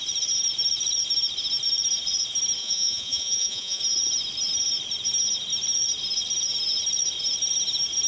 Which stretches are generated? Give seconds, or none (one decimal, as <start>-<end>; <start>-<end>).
2.6-3.8